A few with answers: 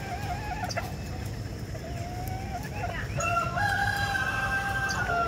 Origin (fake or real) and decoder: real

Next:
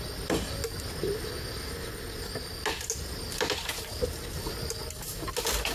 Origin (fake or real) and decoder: real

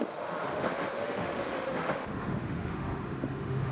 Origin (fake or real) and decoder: fake, autoencoder, DAC-VAE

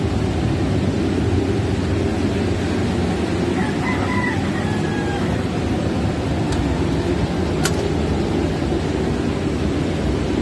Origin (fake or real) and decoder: real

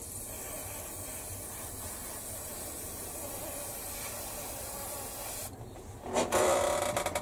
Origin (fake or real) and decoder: real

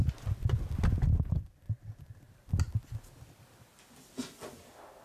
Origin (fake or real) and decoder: real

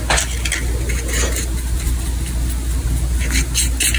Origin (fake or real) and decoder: real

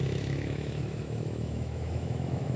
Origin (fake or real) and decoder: fake, autoencoder, DAC-VAE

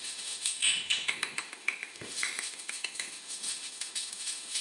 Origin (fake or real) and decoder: fake, autoencoder, DAC-VAE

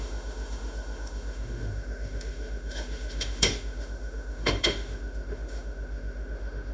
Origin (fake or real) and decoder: fake, autoencoder, DAC-VAE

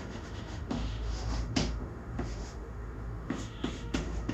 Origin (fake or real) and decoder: fake, autoencoder, DAC-VAE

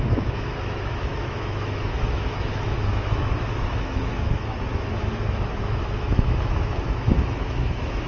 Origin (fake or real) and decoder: fake, autoencoder, DAC-VAE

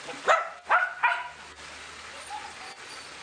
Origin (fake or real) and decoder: real